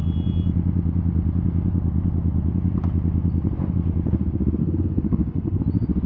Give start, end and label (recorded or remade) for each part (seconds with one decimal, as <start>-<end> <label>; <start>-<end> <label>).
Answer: 0.0-4.6 recorded; 4.6-5.6 remade; 5.6-6.1 recorded